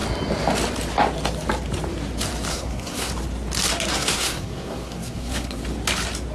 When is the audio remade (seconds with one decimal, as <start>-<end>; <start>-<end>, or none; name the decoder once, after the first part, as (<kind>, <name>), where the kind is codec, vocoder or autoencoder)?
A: 2.5-3.1 (codec, SNAC); 3.9-5.6